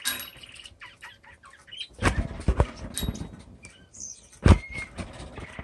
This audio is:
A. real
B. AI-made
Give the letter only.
A